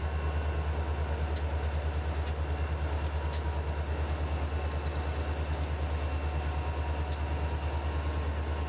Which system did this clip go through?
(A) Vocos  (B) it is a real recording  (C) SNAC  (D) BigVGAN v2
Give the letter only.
B